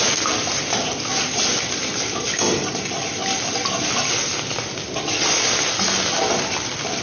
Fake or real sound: real